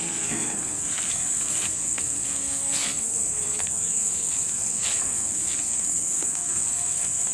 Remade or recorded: remade